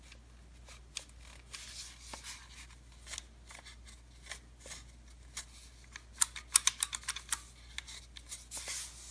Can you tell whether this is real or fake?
real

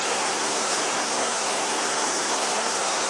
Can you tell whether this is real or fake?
fake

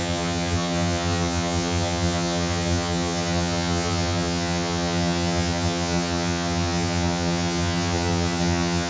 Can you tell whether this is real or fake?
fake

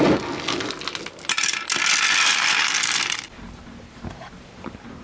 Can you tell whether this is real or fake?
real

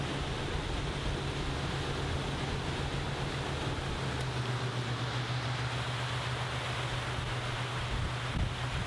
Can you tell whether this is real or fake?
real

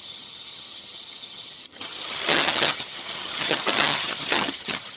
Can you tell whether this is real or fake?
fake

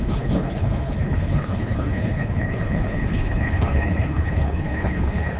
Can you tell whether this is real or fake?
fake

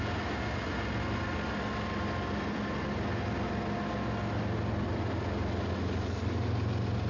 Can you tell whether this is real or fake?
real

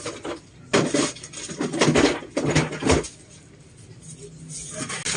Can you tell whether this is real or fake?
real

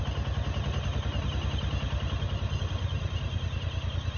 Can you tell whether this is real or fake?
real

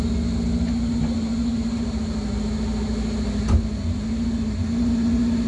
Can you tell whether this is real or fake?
real